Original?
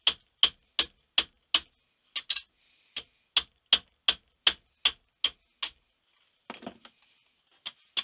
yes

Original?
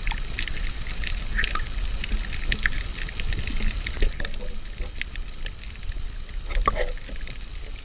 yes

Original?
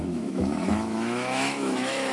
no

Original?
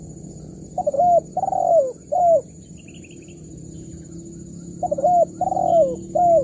yes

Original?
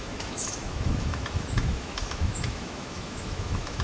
no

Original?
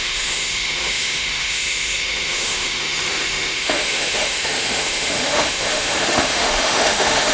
no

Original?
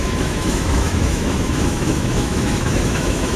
no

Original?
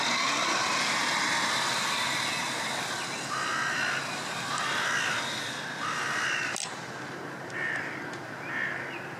yes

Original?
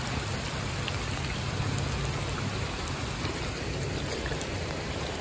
yes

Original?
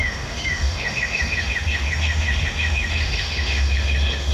no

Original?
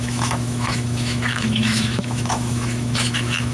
no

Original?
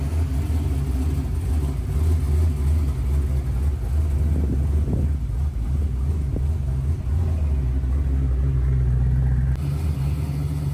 yes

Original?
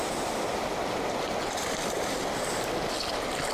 yes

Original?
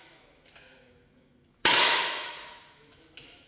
no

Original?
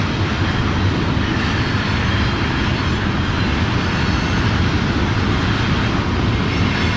yes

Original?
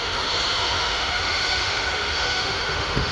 no